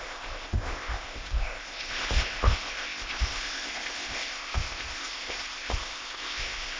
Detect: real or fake fake